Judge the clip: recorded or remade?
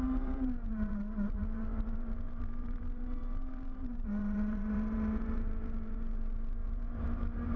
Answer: remade